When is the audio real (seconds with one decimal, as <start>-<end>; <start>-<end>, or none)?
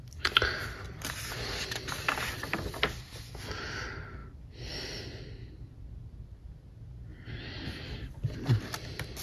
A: 0.0-9.2